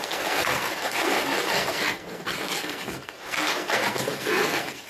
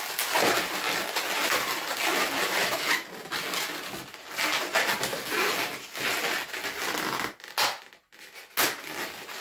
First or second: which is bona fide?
second